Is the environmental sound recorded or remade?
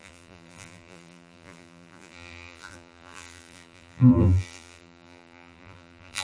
remade